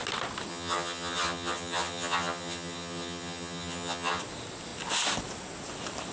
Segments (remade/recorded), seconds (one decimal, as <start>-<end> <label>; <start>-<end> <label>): 0.0-0.5 recorded; 0.5-4.2 remade; 4.2-6.1 recorded